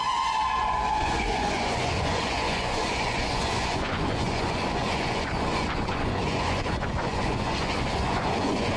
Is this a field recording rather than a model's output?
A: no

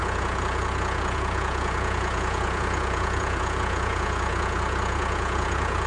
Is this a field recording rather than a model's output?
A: no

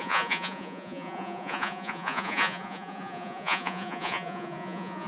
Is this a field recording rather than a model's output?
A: no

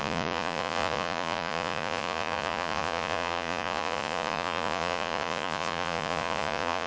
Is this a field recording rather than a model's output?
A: no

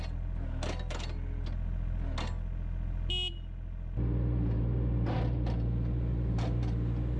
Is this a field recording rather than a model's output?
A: yes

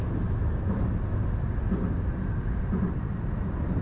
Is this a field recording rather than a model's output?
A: yes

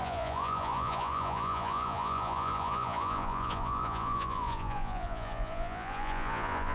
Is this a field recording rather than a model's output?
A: no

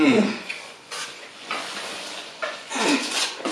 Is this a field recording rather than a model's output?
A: no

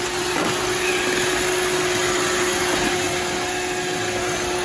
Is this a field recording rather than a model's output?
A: yes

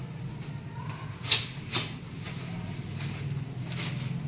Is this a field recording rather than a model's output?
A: yes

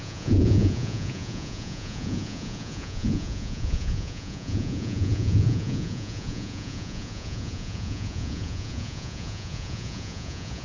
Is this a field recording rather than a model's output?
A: no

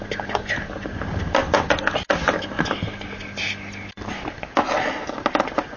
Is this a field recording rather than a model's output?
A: yes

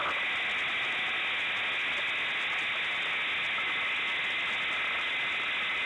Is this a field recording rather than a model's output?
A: yes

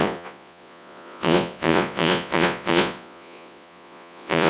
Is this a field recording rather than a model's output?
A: no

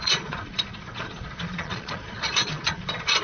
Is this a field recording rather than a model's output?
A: no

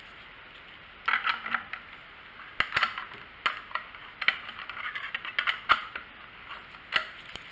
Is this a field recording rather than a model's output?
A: yes